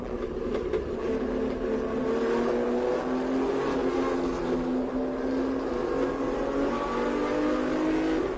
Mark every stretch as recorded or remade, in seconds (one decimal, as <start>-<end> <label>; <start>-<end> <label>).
0.0-8.4 recorded